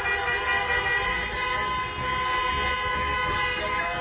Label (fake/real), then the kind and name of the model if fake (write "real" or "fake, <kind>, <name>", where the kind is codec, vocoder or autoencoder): real